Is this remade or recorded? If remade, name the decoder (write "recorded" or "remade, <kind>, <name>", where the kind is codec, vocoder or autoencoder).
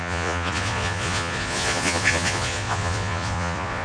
remade, vocoder, Vocos